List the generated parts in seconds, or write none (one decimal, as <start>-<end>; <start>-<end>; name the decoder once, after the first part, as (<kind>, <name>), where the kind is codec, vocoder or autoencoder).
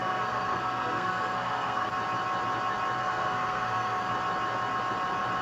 0.0-1.9 (codec, SNAC); 3.0-4.1